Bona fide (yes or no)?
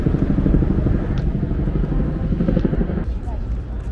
yes